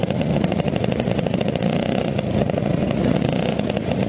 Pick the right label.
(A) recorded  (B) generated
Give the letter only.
B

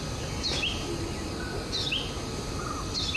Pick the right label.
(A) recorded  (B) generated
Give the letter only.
A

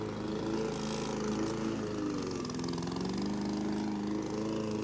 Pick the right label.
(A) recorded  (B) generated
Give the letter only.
A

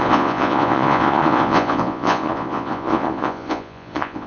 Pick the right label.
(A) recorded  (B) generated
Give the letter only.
B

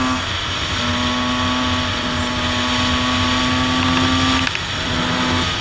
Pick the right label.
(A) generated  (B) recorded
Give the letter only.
B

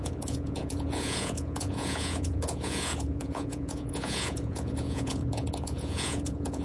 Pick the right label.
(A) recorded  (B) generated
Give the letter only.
B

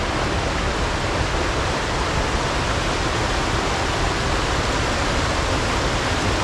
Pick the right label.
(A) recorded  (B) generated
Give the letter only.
A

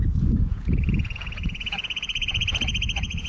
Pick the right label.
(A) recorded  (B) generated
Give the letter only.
B